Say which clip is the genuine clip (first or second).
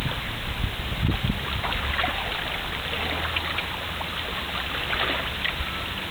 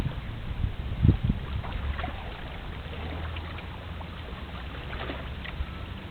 first